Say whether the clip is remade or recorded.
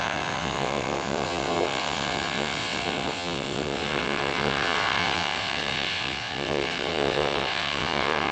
remade